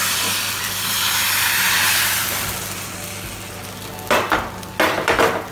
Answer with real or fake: real